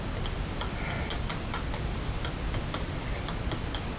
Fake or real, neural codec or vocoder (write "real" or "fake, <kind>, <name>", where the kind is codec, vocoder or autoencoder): real